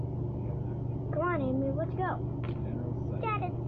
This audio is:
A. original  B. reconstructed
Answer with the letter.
A